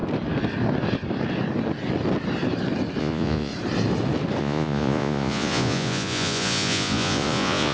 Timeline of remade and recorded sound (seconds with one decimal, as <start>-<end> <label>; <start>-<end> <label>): 0.0-3.0 recorded; 3.0-3.5 remade; 3.5-4.4 recorded; 4.4-7.7 remade